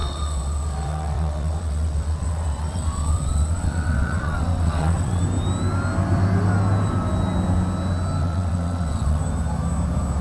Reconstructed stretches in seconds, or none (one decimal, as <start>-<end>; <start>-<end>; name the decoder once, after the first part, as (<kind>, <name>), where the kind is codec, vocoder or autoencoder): 0.0-5.2 (vocoder, WaveNeXt); 8.2-9.2